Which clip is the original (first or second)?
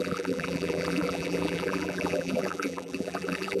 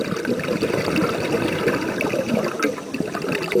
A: second